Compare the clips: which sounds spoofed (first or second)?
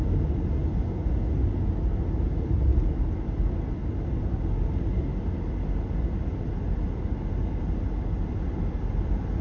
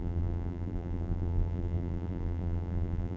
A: second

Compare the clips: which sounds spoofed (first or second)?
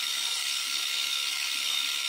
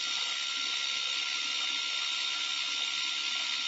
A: first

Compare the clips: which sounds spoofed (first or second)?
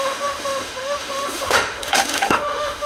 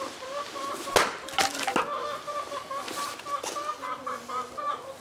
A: first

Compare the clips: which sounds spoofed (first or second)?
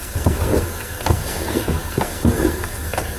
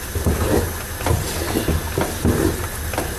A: first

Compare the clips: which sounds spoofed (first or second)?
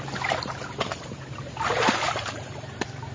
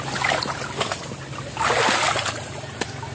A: first